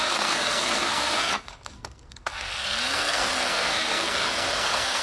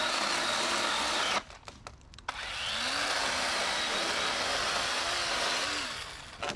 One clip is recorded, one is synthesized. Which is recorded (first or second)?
second